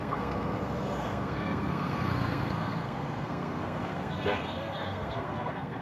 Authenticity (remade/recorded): remade